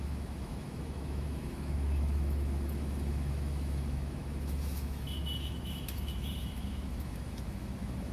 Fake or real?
fake